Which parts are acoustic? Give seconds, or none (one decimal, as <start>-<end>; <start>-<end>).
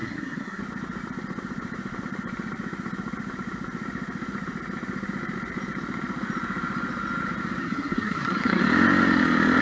0.6-7.6; 8.6-9.6